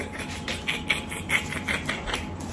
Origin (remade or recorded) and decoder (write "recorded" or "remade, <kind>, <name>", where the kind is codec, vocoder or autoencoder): recorded